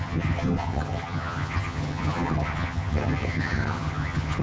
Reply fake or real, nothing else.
fake